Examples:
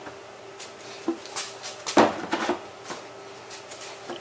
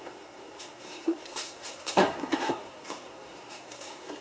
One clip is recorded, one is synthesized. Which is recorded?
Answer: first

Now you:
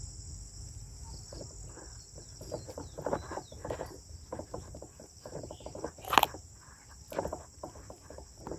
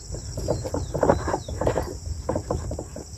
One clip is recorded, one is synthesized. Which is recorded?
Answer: first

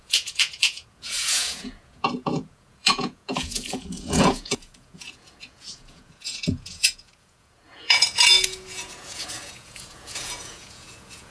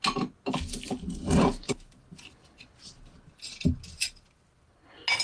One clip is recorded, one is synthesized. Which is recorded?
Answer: second